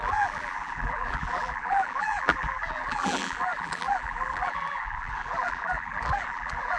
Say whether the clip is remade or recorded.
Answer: remade